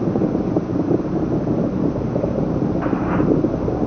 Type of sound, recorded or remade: remade